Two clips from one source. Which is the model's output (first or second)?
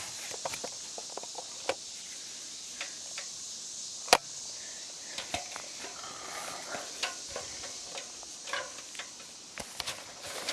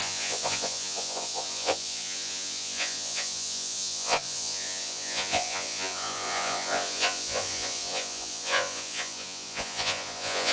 second